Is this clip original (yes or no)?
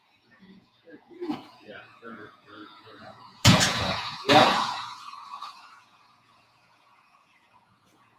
no